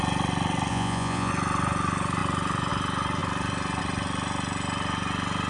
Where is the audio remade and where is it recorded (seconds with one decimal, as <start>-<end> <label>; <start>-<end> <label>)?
0.0-0.7 recorded; 0.7-1.3 remade; 1.3-5.5 recorded